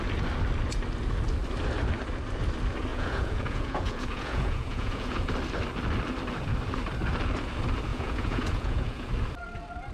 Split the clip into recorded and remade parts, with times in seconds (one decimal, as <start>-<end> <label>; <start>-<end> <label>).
0.0-2.9 recorded; 2.9-5.3 remade; 5.3-7.9 recorded; 7.9-9.1 remade; 9.1-9.9 recorded